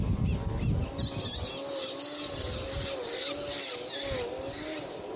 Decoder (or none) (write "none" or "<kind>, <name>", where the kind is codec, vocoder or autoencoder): none